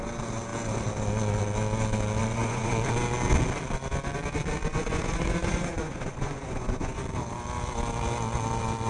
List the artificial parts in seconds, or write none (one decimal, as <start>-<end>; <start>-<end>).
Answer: 2.2-2.7; 4.7-7.0